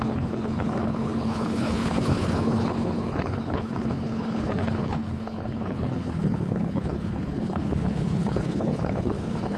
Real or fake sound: fake